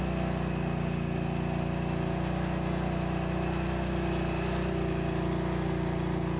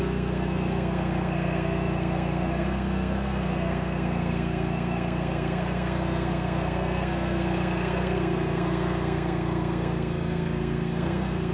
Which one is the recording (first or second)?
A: first